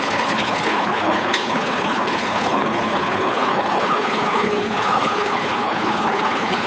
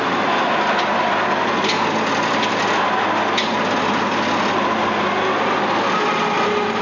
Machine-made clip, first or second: first